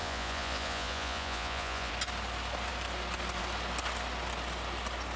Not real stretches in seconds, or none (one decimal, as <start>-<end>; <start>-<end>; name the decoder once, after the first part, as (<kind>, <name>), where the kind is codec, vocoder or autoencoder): 0.0-1.9 (vocoder, Vocos)